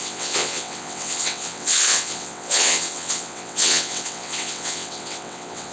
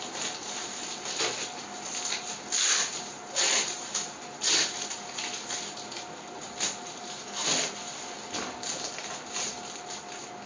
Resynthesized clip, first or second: first